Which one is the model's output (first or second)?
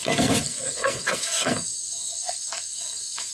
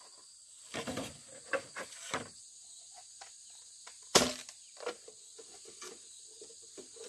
first